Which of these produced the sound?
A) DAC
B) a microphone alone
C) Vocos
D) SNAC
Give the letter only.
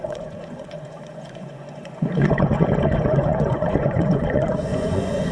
C